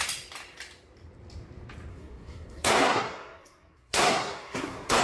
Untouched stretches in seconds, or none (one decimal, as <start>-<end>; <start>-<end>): 0.0-1.9

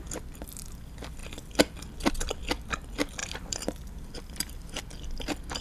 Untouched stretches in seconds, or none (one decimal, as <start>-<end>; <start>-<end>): 0.0-3.2; 4.8-5.6

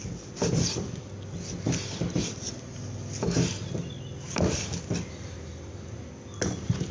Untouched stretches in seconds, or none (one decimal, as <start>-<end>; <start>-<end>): 0.0-6.9

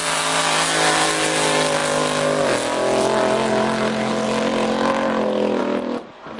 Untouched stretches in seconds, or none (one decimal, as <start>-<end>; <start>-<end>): 0.0-6.4

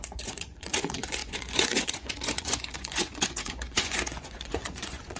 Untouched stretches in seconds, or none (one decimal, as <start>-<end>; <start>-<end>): none

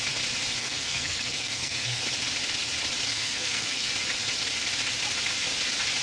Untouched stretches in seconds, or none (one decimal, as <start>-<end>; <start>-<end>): 0.0-0.6; 2.0-3.1; 3.9-6.0

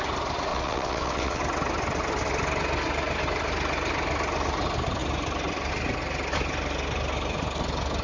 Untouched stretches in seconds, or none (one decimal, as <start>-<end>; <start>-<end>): 0.0-0.5; 1.4-8.0